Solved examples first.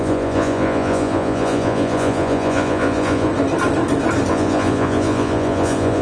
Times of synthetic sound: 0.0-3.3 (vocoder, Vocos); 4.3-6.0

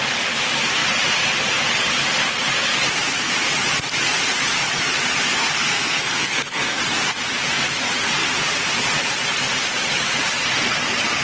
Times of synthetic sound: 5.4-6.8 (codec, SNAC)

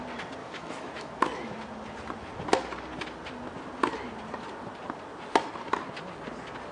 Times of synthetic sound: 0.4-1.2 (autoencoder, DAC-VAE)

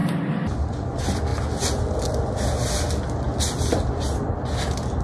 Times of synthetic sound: none